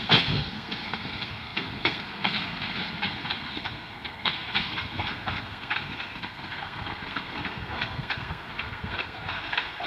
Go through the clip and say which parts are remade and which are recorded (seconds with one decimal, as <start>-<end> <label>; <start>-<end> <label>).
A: 0.0-9.9 remade